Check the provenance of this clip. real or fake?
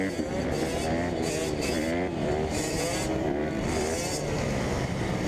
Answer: real